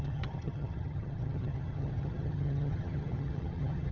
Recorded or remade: remade